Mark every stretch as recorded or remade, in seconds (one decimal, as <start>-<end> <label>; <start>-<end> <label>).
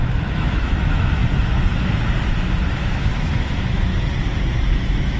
0.0-1.2 remade; 1.2-2.3 recorded; 2.3-3.9 remade; 3.9-4.6 recorded; 4.6-5.2 remade